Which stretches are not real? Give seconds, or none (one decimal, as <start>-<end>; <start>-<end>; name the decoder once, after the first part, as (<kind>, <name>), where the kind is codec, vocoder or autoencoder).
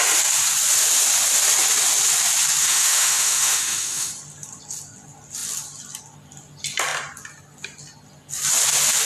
2.6-4.1 (autoencoder, DAC-VAE)